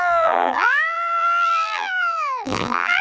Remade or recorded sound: remade